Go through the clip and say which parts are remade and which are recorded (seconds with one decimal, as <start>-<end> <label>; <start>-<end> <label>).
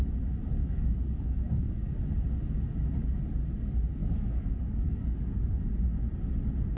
0.0-0.6 recorded; 0.6-1.9 remade; 1.9-4.0 recorded; 4.0-5.4 remade; 5.4-6.8 recorded